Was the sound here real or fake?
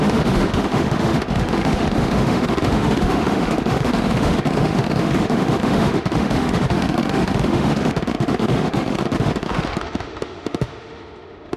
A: fake